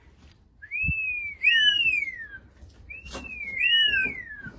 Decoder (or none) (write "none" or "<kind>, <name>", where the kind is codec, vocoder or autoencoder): none